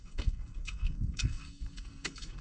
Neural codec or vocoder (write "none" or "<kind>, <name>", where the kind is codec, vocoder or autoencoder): codec, SNAC